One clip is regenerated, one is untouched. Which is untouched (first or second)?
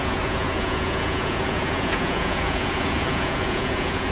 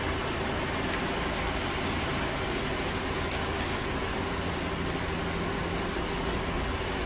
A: second